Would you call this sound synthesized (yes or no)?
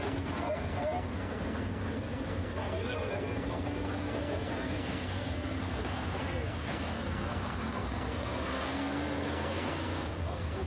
yes